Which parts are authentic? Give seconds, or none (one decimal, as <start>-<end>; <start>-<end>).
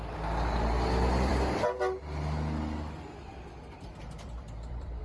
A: 0.0-3.3